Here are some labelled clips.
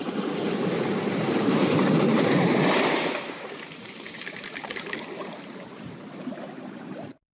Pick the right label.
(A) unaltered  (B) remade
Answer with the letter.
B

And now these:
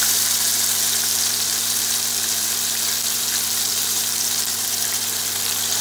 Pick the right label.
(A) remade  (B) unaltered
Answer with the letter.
A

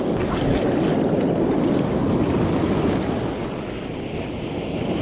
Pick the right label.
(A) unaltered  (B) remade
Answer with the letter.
A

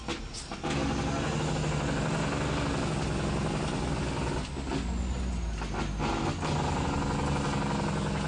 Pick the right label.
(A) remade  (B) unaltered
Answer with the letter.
B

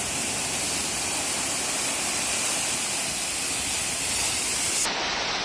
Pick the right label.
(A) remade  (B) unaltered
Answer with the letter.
B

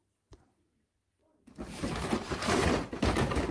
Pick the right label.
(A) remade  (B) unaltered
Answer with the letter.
B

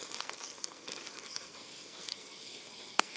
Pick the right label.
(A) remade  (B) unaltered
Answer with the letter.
A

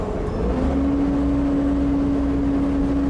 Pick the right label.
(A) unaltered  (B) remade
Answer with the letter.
A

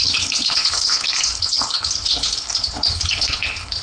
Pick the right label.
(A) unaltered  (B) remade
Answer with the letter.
B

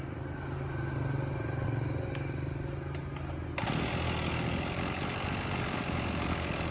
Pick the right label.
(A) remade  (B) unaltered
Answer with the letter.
B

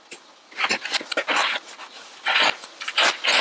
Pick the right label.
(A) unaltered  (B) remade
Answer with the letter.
A